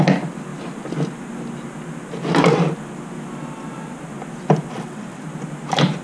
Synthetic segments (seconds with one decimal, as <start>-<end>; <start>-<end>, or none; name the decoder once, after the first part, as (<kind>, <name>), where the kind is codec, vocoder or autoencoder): 4.7-5.2 (vocoder, WaveNeXt)